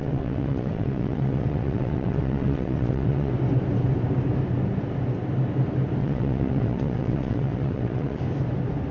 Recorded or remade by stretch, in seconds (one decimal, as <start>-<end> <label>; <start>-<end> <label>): 0.0-3.3 remade; 3.3-6.0 recorded; 6.0-8.2 remade; 8.2-8.9 recorded